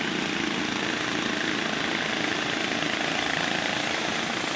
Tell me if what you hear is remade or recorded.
recorded